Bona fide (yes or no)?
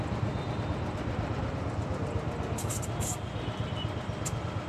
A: yes